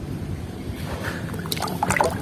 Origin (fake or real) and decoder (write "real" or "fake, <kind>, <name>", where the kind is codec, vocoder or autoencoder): fake, vocoder, BigVGAN v2